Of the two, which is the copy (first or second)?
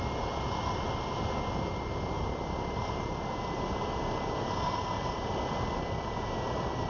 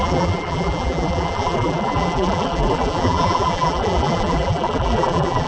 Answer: second